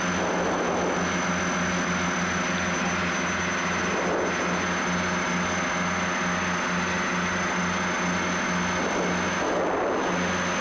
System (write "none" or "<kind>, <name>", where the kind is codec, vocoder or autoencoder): none